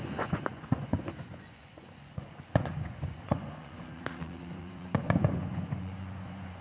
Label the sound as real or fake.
fake